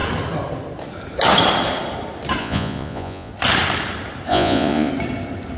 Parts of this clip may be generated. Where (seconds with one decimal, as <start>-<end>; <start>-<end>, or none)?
2.4-3.3; 4.3-4.9

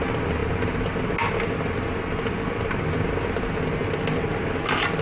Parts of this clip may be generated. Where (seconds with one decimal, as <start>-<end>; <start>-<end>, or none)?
none

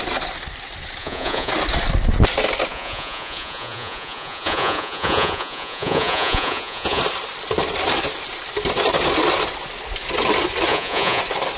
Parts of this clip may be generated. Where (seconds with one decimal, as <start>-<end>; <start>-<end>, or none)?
1.0-1.5; 2.7-7.0; 10.7-11.2

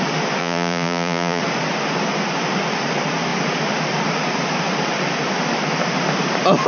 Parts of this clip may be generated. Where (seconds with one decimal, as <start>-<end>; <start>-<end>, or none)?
0.4-1.4

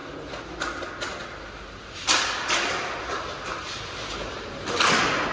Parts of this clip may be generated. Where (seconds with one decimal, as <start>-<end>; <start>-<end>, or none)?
none

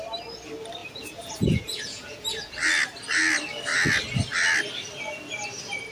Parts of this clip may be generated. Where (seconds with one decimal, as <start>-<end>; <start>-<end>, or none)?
0.8-2.5